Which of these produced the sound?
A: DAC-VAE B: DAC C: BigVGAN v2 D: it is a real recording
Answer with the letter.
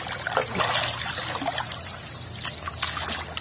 D